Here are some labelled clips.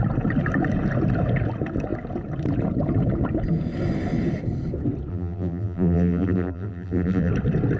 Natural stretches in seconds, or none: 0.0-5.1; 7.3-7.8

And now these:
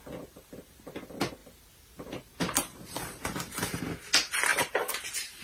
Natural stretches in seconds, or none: 0.0-1.4; 3.8-4.5

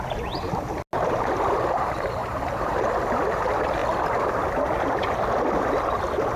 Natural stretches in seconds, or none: 0.0-2.2; 2.7-6.4

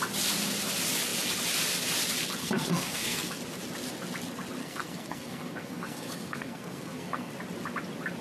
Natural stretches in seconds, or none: 0.0-2.4; 3.4-4.6; 7.3-8.2

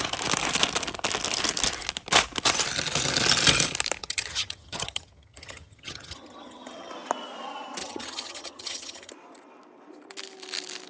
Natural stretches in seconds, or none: 0.0-4.0; 6.9-7.8; 9.1-10.9

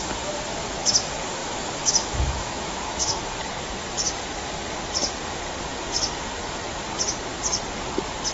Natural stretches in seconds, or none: 0.0-1.4; 3.2-8.3

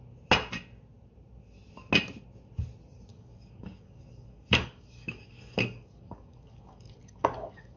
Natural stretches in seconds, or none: 0.0-3.1